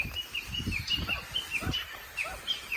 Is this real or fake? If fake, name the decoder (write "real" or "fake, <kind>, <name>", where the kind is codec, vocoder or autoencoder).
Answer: real